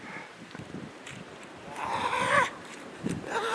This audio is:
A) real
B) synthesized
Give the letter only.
B